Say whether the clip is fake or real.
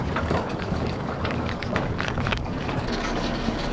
fake